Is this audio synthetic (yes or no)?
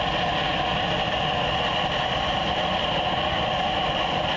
no